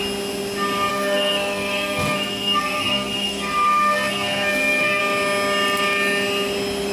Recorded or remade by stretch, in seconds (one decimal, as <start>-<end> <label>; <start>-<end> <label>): 0.0-0.9 recorded; 0.9-5.0 remade; 5.0-6.9 recorded